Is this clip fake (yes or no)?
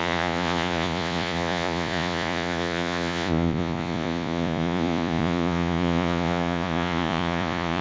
yes